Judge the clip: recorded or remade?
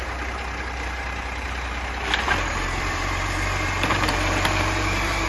remade